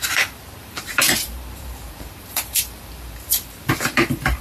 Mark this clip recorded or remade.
remade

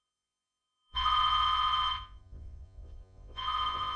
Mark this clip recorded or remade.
remade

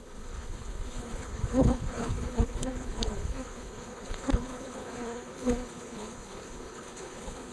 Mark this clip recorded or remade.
remade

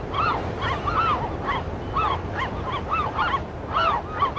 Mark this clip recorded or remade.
recorded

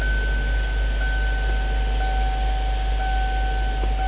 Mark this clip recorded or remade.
recorded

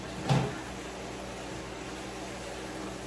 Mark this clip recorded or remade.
recorded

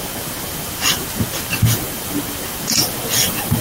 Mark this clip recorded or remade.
recorded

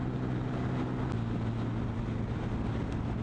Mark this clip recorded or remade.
recorded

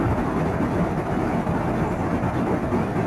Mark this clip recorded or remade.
recorded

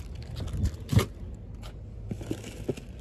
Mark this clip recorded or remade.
recorded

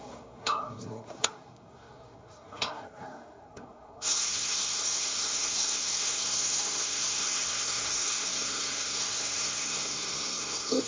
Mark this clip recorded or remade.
remade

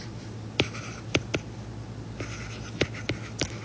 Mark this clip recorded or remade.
recorded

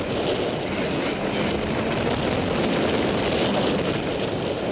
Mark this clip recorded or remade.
recorded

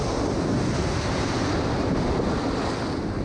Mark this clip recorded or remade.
recorded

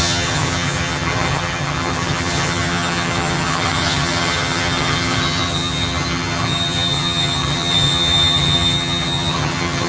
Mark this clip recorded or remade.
remade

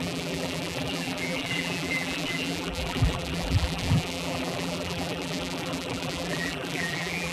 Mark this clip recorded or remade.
remade